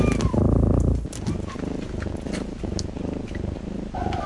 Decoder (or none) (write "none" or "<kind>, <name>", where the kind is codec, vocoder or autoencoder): none